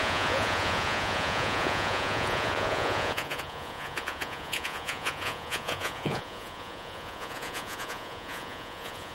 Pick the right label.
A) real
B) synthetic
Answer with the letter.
B